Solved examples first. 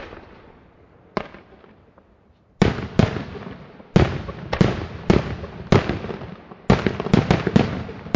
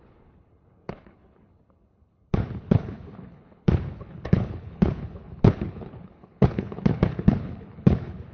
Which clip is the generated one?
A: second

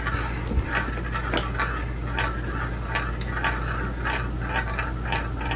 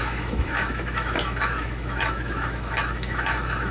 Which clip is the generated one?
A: second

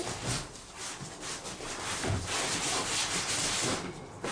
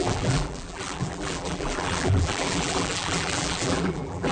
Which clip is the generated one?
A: second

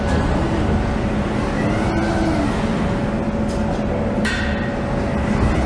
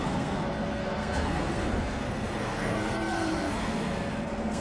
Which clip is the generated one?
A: second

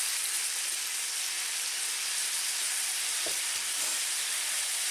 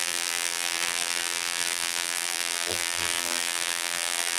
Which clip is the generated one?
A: second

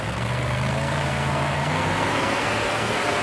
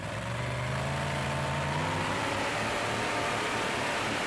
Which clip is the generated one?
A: first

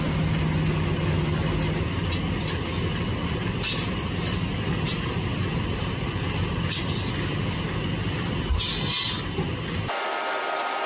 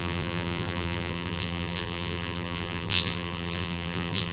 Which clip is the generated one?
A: second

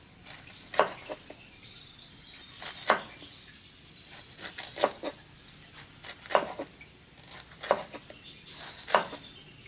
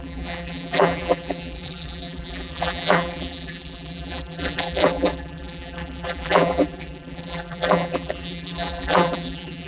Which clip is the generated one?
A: second